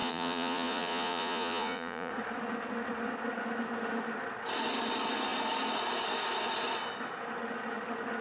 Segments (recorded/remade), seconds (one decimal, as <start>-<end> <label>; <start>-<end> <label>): 0.0-2.1 remade; 2.1-8.2 recorded